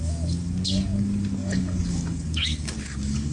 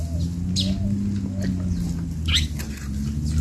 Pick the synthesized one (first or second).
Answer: first